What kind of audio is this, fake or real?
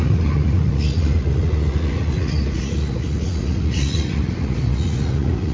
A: fake